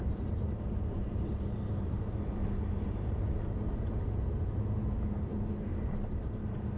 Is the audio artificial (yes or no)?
yes